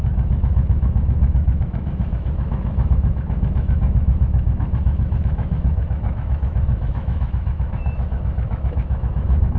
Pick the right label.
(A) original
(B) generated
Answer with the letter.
B